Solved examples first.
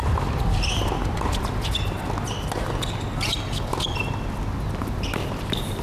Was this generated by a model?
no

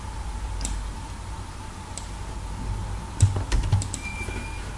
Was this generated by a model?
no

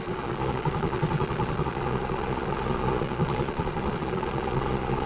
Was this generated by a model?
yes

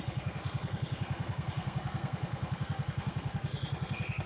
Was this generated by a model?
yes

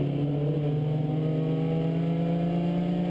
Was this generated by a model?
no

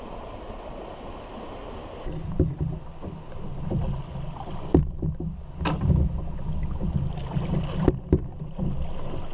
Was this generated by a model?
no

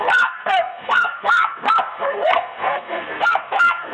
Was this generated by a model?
yes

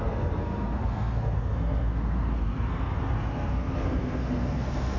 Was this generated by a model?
yes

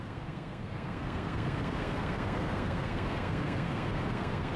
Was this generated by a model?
yes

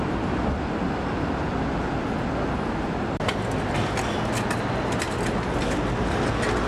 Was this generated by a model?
no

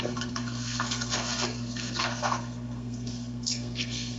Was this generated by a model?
yes